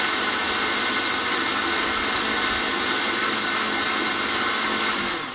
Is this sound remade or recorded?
recorded